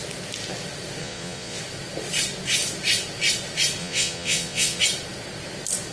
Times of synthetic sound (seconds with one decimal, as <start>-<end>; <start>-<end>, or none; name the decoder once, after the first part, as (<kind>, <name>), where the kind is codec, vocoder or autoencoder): 1.0-1.6 (vocoder, Vocos); 3.8-4.8